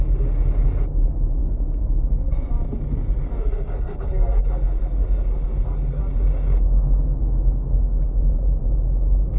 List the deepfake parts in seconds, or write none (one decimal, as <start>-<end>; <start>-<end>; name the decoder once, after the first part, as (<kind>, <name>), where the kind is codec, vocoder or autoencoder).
1.4-2.5 (codec, SNAC); 3.4-6.0; 7.2-8.0